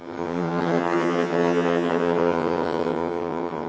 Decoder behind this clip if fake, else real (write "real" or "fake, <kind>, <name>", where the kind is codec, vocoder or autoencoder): fake, vocoder, HiFi-GAN